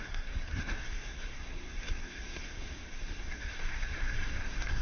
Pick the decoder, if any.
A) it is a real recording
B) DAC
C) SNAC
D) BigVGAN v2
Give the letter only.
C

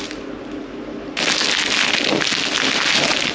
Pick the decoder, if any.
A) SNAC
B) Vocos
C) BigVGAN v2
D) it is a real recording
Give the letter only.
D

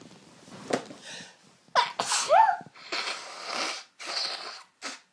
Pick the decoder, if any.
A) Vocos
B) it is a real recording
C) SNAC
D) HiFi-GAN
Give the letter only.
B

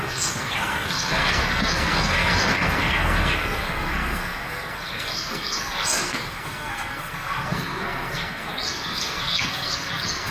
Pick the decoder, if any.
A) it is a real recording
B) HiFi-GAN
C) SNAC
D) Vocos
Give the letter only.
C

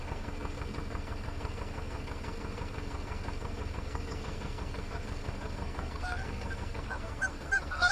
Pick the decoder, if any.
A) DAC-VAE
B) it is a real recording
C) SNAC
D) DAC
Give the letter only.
C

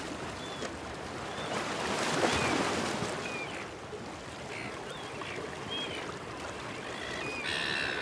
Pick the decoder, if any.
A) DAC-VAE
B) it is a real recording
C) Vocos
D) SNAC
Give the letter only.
B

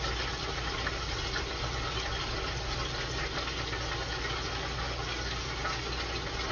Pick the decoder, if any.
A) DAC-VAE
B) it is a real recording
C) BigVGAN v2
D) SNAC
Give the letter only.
B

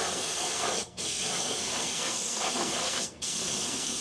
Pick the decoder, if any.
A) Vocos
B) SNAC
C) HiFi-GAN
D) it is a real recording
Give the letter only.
B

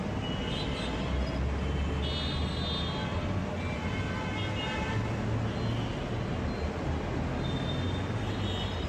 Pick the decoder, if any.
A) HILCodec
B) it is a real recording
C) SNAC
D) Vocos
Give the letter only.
B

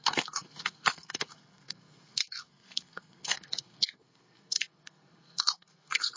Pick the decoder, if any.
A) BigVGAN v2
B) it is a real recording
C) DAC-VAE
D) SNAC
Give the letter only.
D